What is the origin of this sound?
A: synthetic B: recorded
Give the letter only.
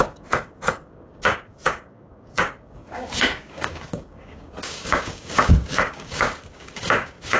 A